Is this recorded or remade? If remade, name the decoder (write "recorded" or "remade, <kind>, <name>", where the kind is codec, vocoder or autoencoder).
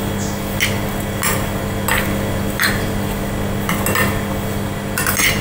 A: recorded